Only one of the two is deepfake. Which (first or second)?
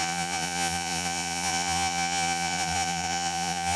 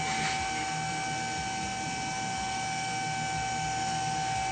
first